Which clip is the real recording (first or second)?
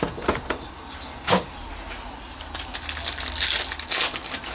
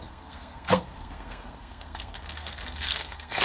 first